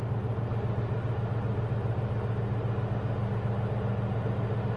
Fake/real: real